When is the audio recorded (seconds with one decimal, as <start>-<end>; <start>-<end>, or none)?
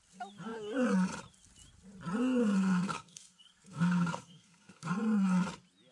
0.0-2.4; 4.9-5.9